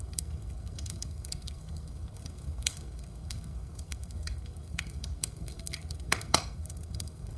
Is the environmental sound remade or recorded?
remade